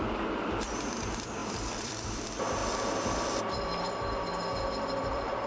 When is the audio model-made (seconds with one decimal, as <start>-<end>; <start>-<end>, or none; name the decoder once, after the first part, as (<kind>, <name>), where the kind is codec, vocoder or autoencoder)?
0.0-4.3 (vocoder, BigVGAN v2); 5.1-5.5